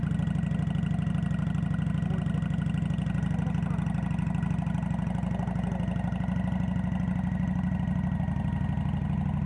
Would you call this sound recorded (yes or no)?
yes